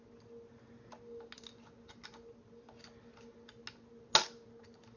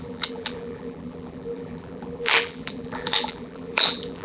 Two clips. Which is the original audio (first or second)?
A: first